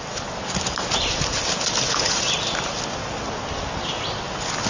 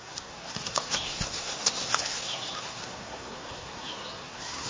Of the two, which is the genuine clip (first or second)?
first